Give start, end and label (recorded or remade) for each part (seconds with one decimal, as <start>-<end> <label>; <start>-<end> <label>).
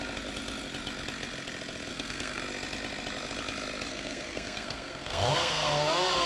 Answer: 0.0-1.9 recorded; 1.9-2.4 remade; 2.4-3.9 recorded; 3.9-6.3 remade